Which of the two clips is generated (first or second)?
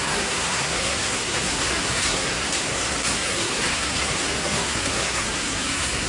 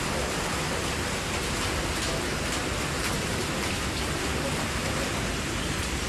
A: first